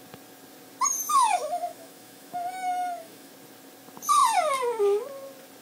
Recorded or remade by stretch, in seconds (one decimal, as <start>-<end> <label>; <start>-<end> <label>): 0.0-1.0 recorded; 1.0-3.3 remade; 3.3-5.6 recorded